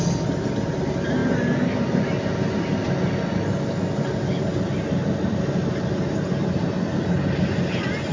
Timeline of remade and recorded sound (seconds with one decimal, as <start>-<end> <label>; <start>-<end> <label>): 0.0-8.1 recorded